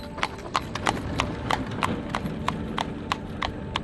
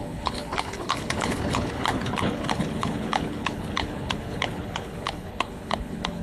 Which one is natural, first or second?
first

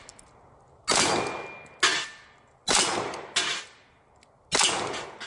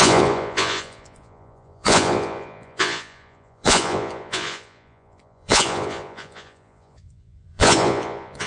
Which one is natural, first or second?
first